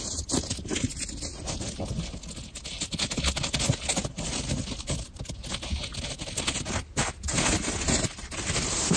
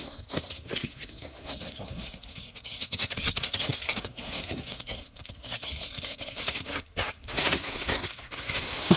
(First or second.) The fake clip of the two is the second